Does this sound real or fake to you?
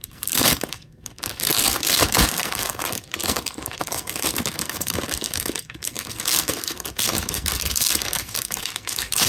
fake